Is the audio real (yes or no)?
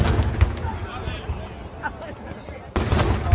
yes